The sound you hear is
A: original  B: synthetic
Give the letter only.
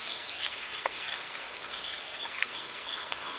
B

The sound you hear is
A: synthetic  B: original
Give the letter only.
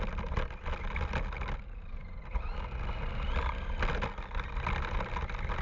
B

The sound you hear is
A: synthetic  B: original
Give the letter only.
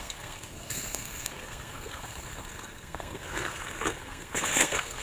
A